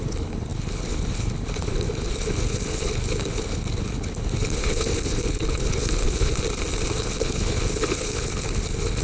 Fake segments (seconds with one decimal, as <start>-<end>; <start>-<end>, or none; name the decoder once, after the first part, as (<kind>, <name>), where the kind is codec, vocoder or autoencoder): 0.0-6.3 (codec, HILCodec); 7.0-9.0